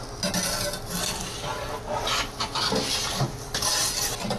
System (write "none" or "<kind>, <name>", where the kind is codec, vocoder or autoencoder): none